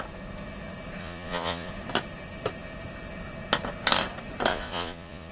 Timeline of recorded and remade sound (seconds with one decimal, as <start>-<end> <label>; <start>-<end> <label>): 0.0-1.0 recorded; 1.0-1.7 remade; 1.7-4.5 recorded; 4.5-5.3 remade